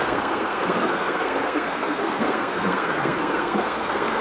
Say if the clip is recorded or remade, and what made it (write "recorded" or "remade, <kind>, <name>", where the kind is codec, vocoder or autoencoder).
remade, codec, SNAC